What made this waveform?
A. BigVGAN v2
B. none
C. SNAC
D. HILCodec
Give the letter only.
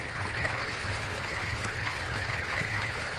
D